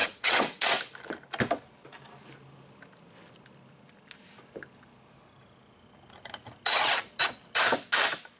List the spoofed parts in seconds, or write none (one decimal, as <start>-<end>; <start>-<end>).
0.0-0.7